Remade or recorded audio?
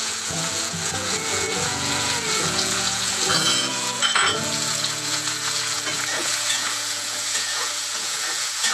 remade